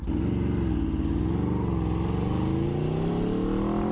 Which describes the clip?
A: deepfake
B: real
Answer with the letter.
B